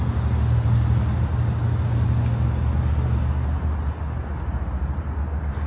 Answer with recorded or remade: recorded